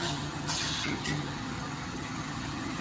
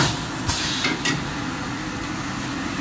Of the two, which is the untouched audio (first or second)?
second